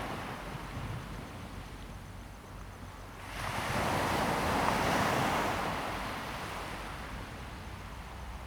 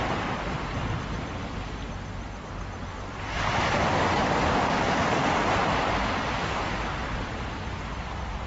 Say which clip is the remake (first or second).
second